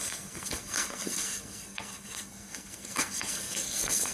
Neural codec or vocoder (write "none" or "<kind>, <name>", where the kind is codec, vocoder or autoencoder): codec, SNAC